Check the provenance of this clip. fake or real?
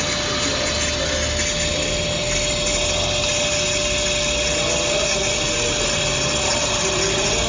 real